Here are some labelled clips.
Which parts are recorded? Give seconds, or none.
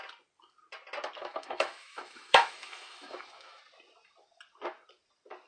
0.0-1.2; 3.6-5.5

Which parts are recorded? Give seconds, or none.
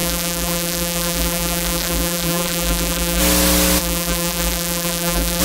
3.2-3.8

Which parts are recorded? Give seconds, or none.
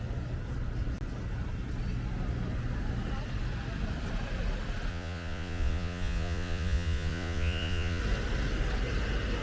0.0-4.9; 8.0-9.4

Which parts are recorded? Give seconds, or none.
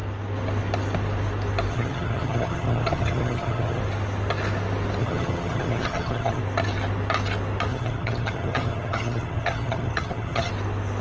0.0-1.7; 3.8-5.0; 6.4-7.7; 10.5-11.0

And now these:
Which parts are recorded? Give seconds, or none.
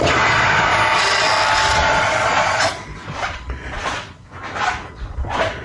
0.7-1.7; 4.4-4.9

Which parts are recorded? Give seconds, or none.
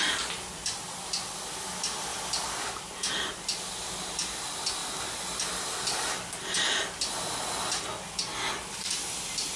0.0-2.1; 3.3-8.3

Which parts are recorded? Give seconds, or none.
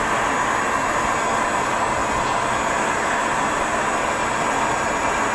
0.0-5.3